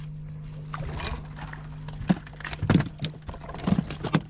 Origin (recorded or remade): recorded